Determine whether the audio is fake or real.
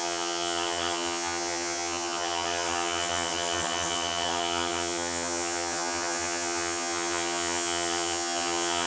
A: fake